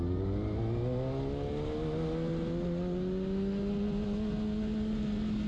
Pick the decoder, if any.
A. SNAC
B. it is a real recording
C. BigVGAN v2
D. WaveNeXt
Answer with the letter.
B